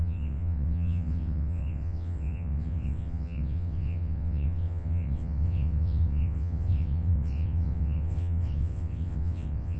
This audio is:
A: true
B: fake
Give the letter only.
B